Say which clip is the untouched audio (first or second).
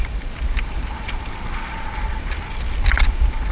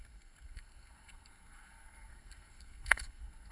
first